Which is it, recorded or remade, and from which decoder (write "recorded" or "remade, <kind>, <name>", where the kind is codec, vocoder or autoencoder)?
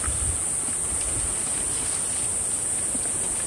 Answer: recorded